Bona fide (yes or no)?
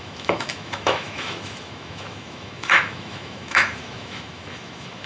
no